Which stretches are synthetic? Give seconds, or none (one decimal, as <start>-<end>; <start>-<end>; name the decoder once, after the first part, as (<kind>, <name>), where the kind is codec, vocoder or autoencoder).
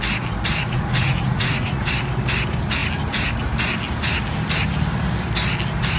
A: 0.6-1.9 (vocoder, Vocos)